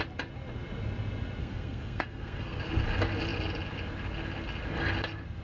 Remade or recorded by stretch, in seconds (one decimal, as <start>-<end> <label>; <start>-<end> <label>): 0.0-1.4 recorded; 1.4-2.6 remade; 2.6-5.4 recorded